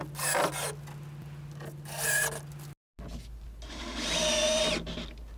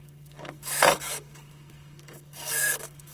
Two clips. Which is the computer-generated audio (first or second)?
second